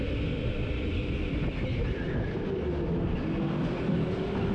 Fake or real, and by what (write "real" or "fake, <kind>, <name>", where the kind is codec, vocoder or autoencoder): real